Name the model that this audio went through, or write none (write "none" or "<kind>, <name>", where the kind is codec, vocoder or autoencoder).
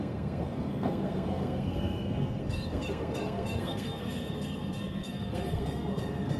codec, SNAC